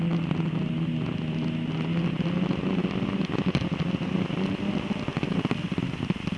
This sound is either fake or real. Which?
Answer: real